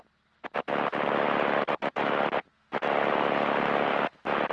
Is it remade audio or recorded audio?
recorded